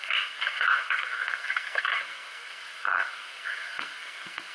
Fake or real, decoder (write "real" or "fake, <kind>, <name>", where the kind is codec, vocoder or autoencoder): fake, codec, SNAC